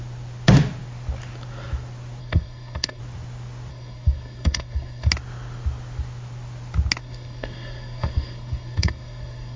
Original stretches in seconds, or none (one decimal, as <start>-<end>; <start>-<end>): 0.0-2.2; 3.0-3.7; 5.1-7.0